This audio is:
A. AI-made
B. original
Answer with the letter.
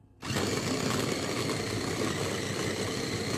B